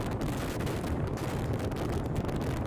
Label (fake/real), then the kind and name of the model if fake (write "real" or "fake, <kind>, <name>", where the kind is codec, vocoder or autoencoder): real